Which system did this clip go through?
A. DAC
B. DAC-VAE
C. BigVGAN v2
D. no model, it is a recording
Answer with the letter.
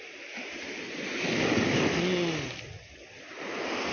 D